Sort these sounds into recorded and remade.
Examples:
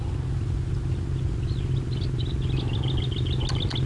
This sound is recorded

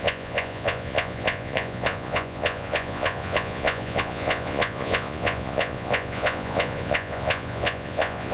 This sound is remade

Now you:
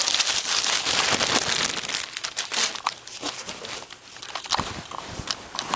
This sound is recorded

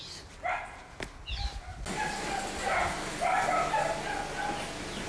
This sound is recorded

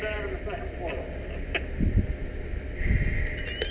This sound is recorded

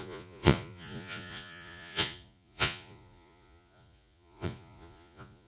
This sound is remade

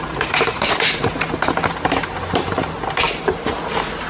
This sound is recorded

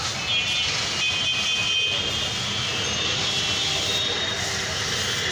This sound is recorded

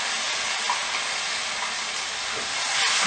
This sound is recorded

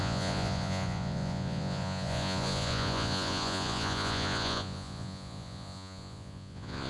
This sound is remade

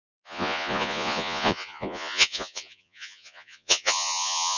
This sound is remade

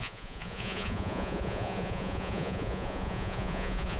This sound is remade